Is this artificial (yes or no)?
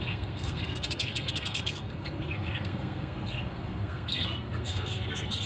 yes